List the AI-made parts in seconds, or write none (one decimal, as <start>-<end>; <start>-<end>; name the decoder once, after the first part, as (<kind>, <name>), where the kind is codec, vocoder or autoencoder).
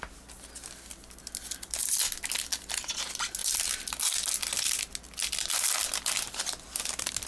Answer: none